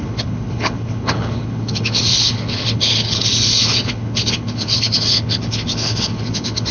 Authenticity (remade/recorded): remade